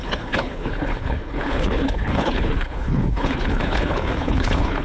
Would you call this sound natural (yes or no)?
no